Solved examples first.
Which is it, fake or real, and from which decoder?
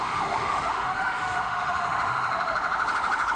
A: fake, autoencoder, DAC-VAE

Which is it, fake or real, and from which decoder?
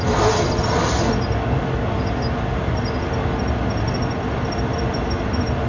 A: real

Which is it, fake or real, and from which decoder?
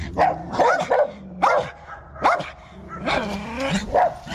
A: real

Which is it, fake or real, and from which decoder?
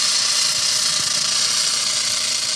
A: real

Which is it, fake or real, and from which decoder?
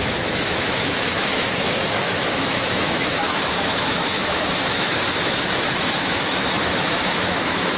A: fake, autoencoder, DAC-VAE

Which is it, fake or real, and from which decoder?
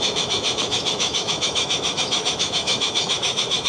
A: fake, autoencoder, DAC-VAE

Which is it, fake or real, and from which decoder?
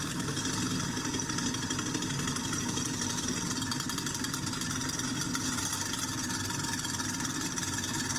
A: real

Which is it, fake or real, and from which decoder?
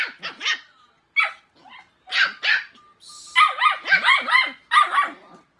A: real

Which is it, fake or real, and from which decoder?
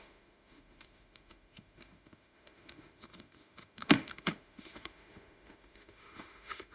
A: fake, autoencoder, DAC-VAE